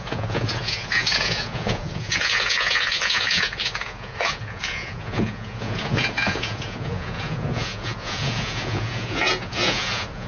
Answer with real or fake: fake